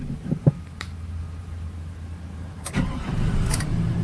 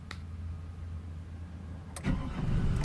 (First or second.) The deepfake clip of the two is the first